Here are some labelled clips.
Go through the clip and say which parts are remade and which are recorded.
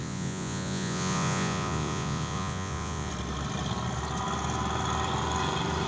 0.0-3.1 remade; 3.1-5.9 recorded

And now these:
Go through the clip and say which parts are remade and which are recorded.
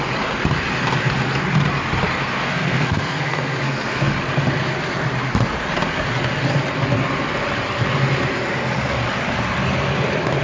0.0-2.2 recorded; 2.2-4.1 remade; 4.1-10.4 recorded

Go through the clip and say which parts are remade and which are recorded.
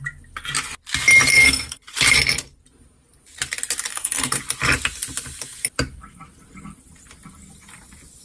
0.0-1.3 recorded; 1.3-1.8 remade; 1.8-3.9 recorded; 3.9-4.4 remade; 4.4-8.2 recorded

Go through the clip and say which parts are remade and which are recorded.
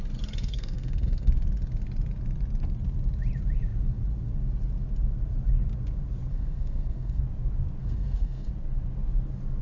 0.0-0.4 recorded; 0.4-1.3 remade; 1.3-6.3 recorded; 6.3-7.2 remade; 7.2-7.8 recorded; 7.8-8.5 remade; 8.5-9.6 recorded